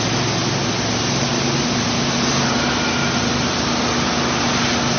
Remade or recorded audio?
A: recorded